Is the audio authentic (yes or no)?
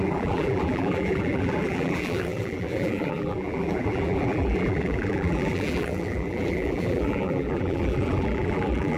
no